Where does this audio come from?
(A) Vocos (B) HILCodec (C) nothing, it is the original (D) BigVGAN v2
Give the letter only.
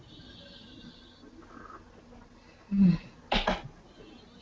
C